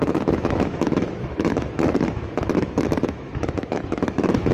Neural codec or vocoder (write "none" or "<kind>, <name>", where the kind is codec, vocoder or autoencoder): autoencoder, DAC-VAE